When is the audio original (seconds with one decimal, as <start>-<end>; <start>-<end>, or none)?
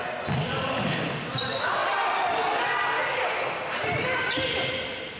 0.0-5.2